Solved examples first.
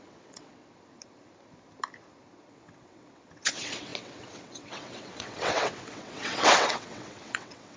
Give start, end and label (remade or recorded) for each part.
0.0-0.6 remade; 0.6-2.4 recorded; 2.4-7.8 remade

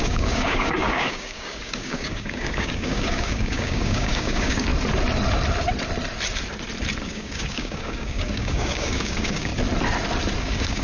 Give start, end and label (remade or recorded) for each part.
0.0-4.7 remade; 4.7-7.0 recorded; 7.0-9.5 remade; 9.5-10.4 recorded; 10.4-10.8 remade

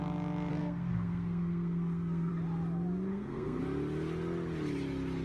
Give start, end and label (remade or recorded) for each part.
0.0-0.5 recorded; 0.5-2.3 remade; 2.3-3.1 recorded; 3.1-3.6 remade; 3.6-5.2 recorded

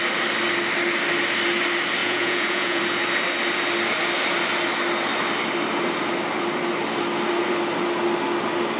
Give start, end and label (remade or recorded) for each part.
0.0-2.0 recorded; 2.0-2.8 remade; 2.8-8.8 recorded

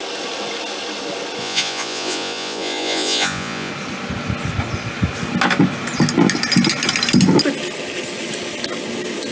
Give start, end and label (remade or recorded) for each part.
0.0-1.4 recorded; 1.4-3.7 remade; 3.7-9.3 recorded

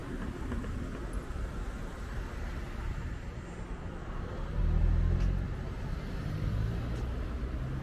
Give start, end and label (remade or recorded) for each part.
0.0-7.8 recorded